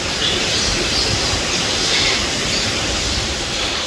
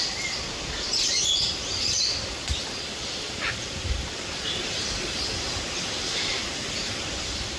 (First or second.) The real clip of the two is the first